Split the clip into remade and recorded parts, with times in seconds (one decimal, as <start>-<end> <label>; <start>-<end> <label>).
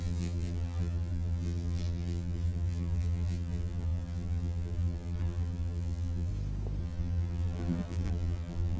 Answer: 0.0-6.3 remade; 6.3-6.8 recorded; 6.8-8.8 remade